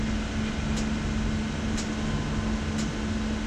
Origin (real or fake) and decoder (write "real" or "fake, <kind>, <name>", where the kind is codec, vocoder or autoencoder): real